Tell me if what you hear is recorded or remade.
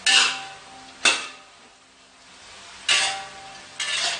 recorded